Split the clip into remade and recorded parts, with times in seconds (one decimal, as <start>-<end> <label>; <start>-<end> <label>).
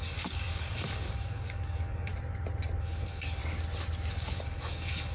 0.0-2.1 remade; 2.1-2.8 recorded; 2.8-3.4 remade; 3.4-4.1 recorded; 4.1-5.1 remade